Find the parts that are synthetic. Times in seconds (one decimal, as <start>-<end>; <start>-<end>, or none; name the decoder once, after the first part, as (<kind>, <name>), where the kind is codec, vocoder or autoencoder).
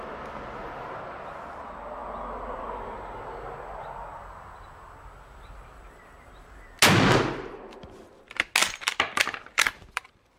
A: 4.1-6.0 (vocoder, BigVGAN v2); 8.6-10.4